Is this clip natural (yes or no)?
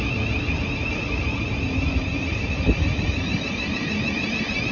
yes